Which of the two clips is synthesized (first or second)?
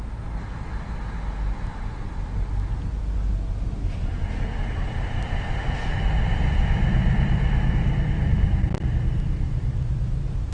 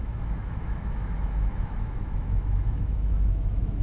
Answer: second